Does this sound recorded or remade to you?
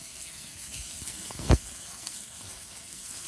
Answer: remade